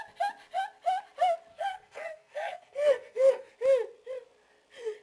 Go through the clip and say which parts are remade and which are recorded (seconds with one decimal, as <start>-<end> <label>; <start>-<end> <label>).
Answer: 0.0-1.5 recorded; 1.5-3.5 remade; 3.5-5.0 recorded